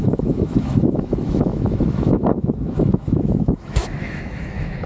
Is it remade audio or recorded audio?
remade